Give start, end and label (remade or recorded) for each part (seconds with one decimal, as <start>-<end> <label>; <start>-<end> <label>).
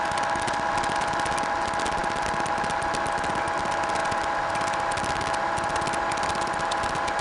0.0-7.2 recorded